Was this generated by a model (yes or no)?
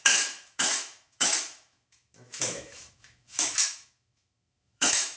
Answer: yes